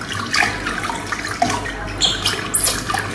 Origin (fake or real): real